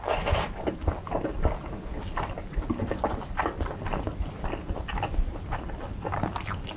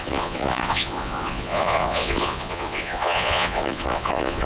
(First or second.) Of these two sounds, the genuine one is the first